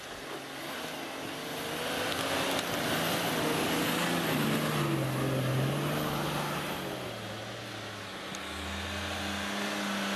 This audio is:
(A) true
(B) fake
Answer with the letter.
A